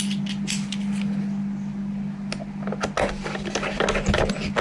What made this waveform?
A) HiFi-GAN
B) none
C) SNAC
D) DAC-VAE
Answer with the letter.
B